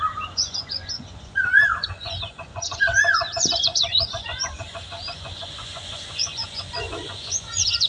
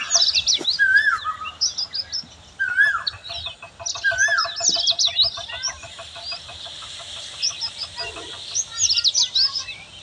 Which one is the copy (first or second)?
first